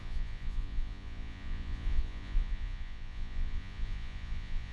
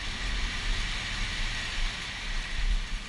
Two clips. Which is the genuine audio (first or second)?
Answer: second